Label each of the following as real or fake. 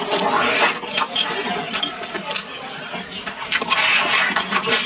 real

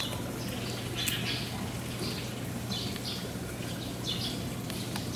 real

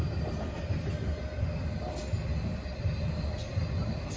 real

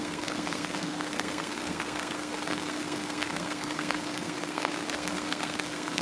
fake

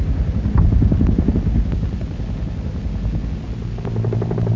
real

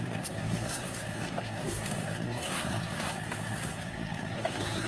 fake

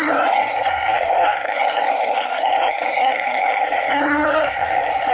fake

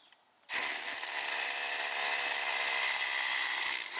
real